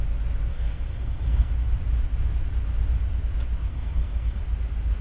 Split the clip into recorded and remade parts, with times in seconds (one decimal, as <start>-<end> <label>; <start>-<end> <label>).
0.0-0.5 recorded; 0.5-1.5 remade; 1.5-3.7 recorded; 3.7-4.4 remade; 4.4-5.0 recorded